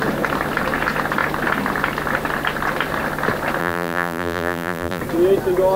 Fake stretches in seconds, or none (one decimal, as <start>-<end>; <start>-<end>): 3.6-5.0